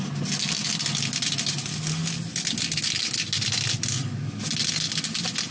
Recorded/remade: recorded